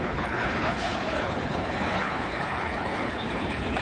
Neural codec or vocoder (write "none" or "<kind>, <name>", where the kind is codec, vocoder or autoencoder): codec, HILCodec